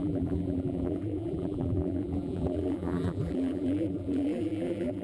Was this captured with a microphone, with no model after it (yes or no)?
no